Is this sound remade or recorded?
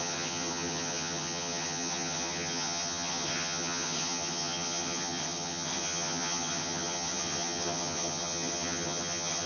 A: remade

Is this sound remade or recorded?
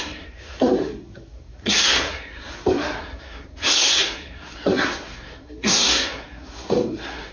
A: remade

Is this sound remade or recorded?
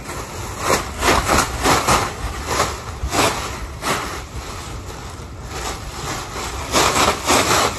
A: recorded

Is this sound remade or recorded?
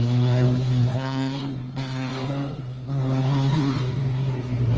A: remade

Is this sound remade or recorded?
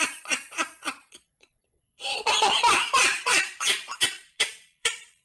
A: remade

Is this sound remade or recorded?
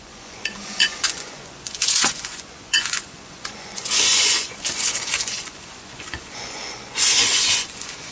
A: remade